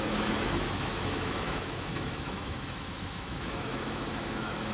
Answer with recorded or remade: remade